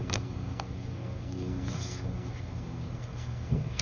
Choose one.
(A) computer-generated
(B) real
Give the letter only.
A